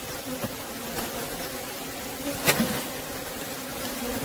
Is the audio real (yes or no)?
yes